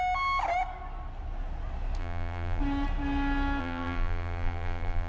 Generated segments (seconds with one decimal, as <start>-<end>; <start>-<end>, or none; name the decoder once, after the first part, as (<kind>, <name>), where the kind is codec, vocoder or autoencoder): 2.0-2.6 (vocoder, BigVGAN v2); 3.6-5.1